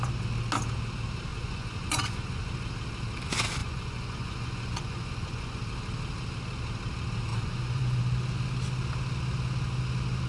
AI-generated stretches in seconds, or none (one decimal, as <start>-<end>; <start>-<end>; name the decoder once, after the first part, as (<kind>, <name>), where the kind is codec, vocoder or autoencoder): 1.3-2.5 (vocoder, Vocos); 3.6-5.6; 7.3-8.0